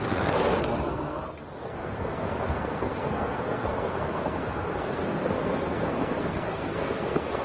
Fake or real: fake